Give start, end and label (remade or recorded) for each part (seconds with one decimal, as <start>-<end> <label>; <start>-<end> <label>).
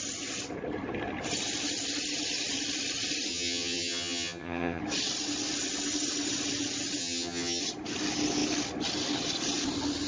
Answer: 0.0-3.3 recorded; 3.3-4.8 remade; 4.8-7.0 recorded; 7.0-7.6 remade; 7.6-10.1 recorded